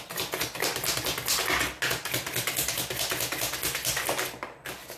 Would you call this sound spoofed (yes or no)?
no